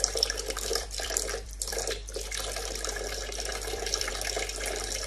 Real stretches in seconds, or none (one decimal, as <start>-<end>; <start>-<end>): 0.0-0.7; 1.7-3.5; 4.1-5.1